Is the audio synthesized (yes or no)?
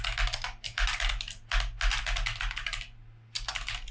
no